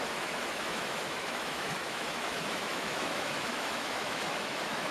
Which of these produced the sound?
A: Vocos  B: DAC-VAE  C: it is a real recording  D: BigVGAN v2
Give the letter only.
B